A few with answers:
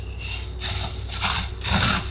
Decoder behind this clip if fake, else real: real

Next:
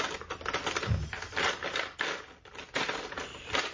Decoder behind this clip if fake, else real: real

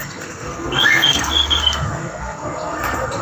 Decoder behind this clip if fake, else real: fake, codec, SNAC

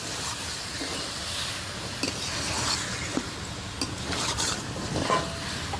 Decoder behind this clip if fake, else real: real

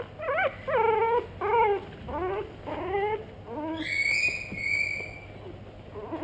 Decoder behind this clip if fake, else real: real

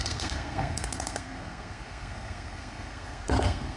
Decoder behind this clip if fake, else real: fake, codec, SNAC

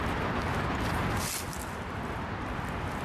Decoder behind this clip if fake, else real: real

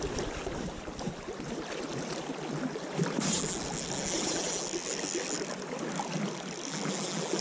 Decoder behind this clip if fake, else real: real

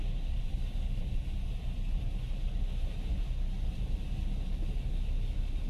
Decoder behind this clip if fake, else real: real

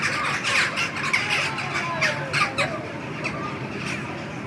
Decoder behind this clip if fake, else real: real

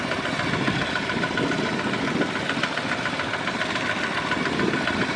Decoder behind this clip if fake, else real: real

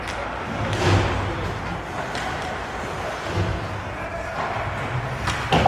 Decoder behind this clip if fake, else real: real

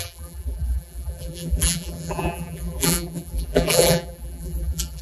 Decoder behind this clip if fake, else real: fake, vocoder, BigVGAN v2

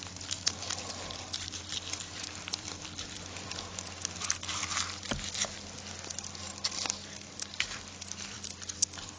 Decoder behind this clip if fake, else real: fake, vocoder, BigVGAN v2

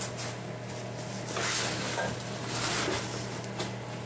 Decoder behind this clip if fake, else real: real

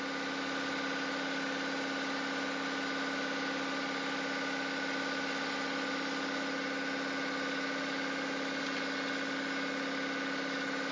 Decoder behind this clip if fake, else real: real